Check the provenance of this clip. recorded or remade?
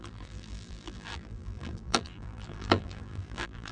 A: remade